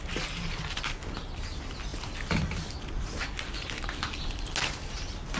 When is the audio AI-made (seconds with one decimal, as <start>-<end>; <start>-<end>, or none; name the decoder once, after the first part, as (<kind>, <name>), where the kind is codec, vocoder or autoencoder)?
none